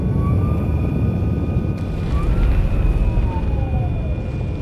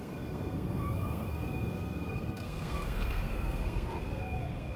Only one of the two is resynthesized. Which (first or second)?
second